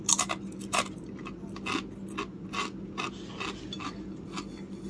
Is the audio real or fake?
real